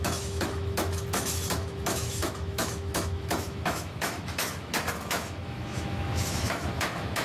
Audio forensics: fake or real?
fake